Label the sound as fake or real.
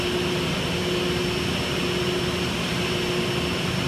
real